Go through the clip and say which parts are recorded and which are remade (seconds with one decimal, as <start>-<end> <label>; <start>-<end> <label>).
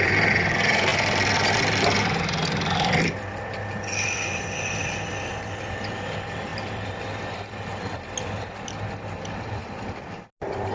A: 0.0-0.9 recorded; 0.9-5.4 remade; 5.4-10.7 recorded